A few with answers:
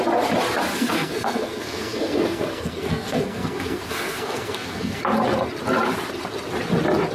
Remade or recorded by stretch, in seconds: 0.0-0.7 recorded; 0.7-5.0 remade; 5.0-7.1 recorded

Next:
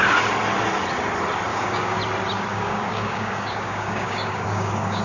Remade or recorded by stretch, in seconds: 0.0-1.5 recorded; 1.5-2.0 remade; 2.0-2.5 recorded; 2.5-5.0 remade

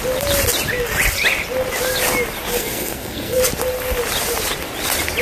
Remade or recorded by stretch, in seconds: 0.0-2.5 recorded; 2.5-3.4 remade; 3.4-5.2 recorded

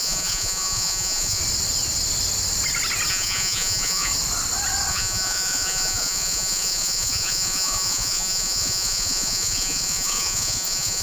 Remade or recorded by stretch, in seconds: 0.0-1.4 remade; 1.4-3.1 recorded; 3.1-4.1 remade; 4.1-4.9 recorded; 4.9-11.0 remade

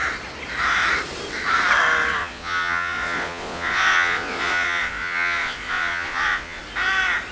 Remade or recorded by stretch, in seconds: 0.0-2.2 recorded; 2.2-6.6 remade; 6.6-7.3 recorded

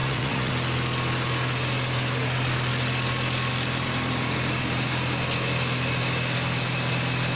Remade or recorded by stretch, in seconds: 0.0-0.5 remade; 0.5-7.4 recorded